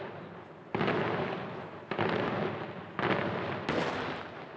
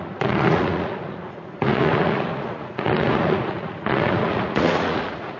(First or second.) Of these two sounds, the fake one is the second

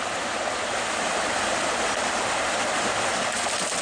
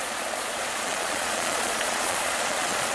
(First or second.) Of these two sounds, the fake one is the second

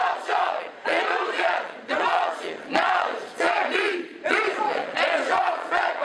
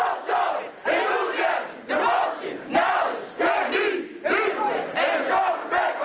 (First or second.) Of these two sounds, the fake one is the first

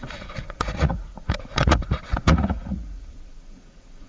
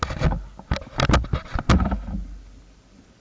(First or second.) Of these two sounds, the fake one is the first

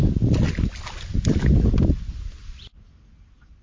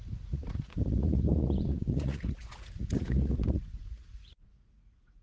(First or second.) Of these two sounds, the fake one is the second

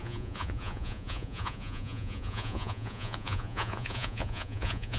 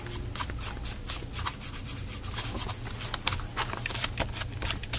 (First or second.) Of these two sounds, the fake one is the first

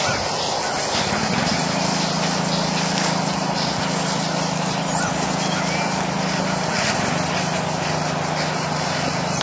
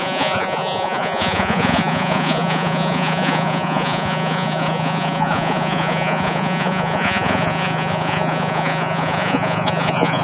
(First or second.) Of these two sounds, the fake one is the second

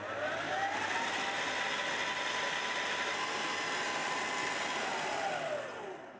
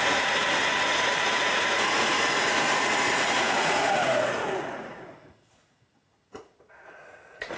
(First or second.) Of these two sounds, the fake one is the second